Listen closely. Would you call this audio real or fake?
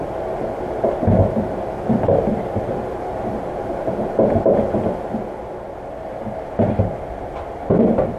real